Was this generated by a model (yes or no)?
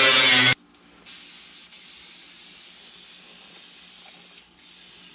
no